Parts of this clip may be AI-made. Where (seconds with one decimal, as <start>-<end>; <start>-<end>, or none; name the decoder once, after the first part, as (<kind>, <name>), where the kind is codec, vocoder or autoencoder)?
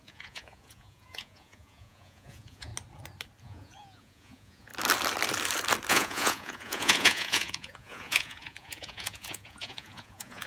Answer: 0.0-2.7 (vocoder, Vocos); 3.4-4.7; 5.9-10.5